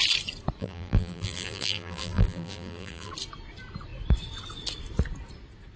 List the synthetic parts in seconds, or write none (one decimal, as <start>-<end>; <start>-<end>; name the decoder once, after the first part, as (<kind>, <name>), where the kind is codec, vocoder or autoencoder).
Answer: 0.6-3.1 (vocoder, BigVGAN v2)